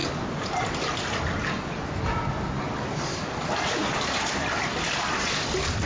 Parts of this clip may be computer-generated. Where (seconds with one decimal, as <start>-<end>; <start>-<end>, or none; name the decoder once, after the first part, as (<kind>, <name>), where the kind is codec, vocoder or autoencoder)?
none